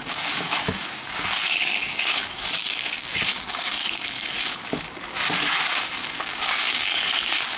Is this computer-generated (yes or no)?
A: yes